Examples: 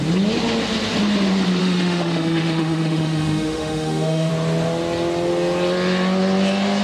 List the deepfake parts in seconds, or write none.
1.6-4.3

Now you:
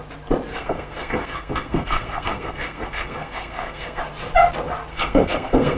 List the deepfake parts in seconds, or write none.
0.5-4.0; 4.9-5.8

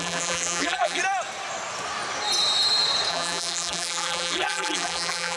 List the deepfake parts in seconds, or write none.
0.0-1.0; 3.1-5.4

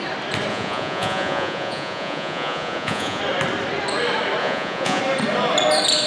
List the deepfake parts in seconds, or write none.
0.5-3.2; 4.4-5.0

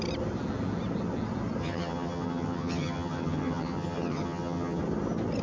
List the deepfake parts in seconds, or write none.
1.6-4.8

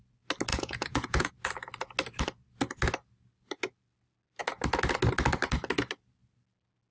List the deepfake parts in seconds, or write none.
0.5-1.3